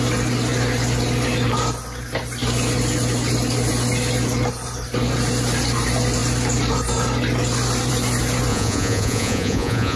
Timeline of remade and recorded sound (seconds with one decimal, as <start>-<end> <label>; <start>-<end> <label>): 0.0-8.5 recorded; 8.5-10.0 remade